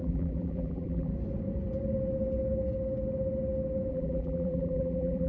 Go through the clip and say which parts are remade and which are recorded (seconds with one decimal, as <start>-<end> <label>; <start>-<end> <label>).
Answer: 0.0-1.1 remade; 1.1-3.9 recorded; 3.9-5.3 remade